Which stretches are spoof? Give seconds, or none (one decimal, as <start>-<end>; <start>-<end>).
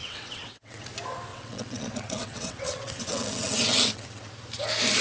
0.0-0.8; 1.3-4.3